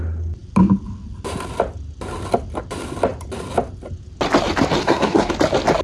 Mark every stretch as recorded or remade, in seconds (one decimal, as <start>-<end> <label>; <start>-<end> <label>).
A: 0.0-4.8 recorded; 4.8-5.3 remade; 5.3-5.8 recorded

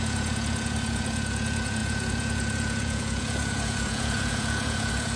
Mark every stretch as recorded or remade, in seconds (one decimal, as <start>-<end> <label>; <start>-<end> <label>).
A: 0.0-5.2 remade

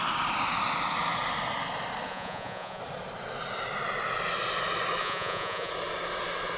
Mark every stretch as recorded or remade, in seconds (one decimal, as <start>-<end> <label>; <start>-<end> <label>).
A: 0.0-2.1 recorded; 2.1-2.8 remade; 2.8-5.0 recorded; 5.0-5.7 remade; 5.7-6.6 recorded

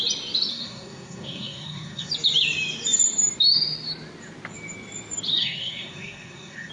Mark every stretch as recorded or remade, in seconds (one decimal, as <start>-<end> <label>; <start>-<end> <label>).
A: 0.0-0.5 recorded; 0.5-2.1 remade; 2.1-5.4 recorded; 5.4-6.7 remade

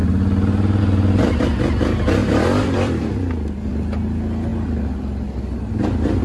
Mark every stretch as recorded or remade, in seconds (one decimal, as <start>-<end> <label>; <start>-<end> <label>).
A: 0.0-6.2 recorded

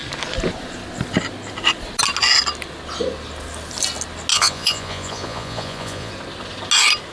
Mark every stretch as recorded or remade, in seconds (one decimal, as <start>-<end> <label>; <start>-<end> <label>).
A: 0.0-4.3 recorded; 4.3-6.1 remade; 6.1-7.1 recorded